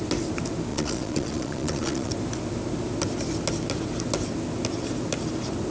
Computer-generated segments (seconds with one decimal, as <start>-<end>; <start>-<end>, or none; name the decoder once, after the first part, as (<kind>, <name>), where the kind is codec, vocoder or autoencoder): 0.7-2.1 (vocoder, Vocos)